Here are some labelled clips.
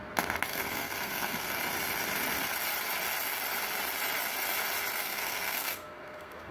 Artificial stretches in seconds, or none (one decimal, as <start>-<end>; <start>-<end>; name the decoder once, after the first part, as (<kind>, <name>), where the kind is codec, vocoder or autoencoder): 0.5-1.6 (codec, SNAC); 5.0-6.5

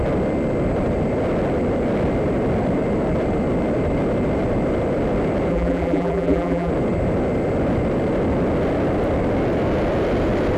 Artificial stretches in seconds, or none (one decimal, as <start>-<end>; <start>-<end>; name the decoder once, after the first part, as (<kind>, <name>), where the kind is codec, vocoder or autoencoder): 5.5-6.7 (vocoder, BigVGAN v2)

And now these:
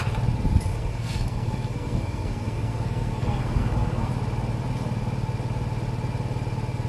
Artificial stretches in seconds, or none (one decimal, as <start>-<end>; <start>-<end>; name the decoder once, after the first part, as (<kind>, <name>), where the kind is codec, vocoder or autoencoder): 0.7-4.1 (codec, SNAC)

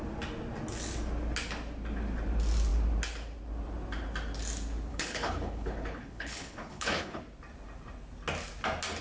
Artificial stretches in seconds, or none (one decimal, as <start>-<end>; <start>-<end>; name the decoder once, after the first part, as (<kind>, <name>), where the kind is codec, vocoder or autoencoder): 4.9-7.2 (codec, HILCodec)

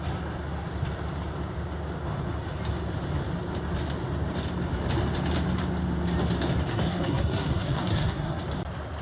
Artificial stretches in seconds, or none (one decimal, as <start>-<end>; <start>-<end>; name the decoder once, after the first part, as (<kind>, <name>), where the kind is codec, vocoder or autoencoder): 6.7-8.4 (codec, SNAC)